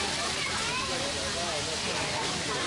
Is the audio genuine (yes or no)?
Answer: yes